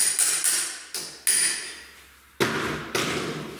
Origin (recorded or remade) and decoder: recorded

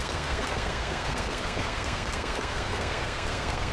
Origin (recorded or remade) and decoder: remade, codec, SNAC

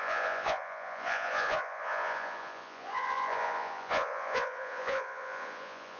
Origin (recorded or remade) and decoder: remade, vocoder, Vocos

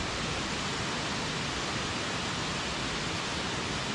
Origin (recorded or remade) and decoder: recorded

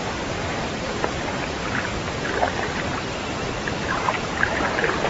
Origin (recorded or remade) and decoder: remade, vocoder, BigVGAN v2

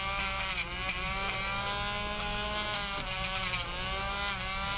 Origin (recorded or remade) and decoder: recorded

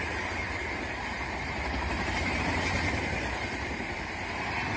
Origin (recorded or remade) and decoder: remade, vocoder, BigVGAN v2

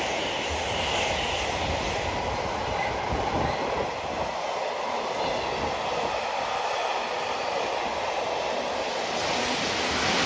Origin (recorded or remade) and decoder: recorded